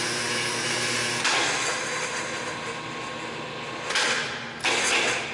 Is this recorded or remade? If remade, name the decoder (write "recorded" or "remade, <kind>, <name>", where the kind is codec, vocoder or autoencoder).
recorded